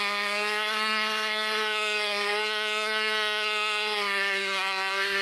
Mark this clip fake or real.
fake